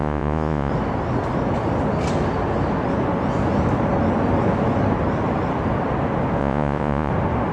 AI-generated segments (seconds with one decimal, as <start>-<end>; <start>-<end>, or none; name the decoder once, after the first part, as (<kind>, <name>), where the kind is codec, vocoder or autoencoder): 0.0-0.7 (vocoder, Vocos); 6.4-7.1